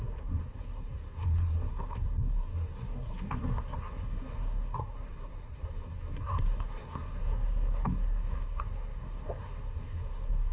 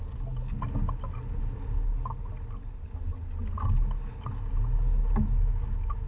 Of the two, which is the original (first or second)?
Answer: second